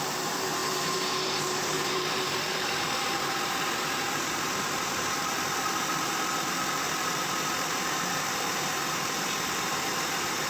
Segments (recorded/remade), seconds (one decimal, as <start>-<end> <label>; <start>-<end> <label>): 0.0-10.5 remade